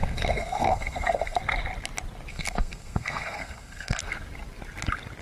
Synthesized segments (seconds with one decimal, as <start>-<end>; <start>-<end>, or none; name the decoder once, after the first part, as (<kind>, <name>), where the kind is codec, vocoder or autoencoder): 0.0-1.4 (codec, SNAC); 2.3-4.0